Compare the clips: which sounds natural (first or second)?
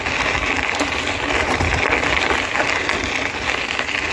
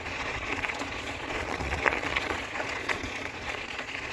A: first